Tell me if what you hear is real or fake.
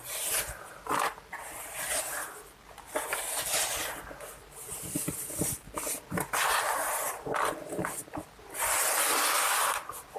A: real